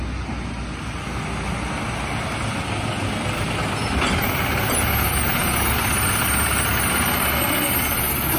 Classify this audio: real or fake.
real